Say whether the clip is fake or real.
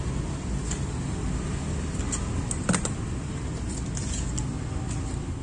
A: real